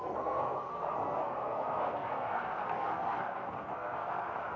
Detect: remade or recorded remade